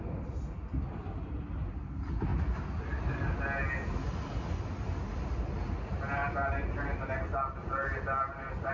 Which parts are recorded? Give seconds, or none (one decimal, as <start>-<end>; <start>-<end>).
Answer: 0.0-8.7